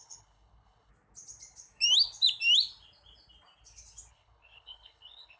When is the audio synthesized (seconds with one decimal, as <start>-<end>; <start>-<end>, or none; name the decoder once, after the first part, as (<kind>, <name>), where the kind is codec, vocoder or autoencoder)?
0.0-0.9 (codec, HILCodec); 4.1-5.4